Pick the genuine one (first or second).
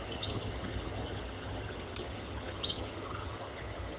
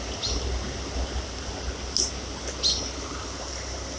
second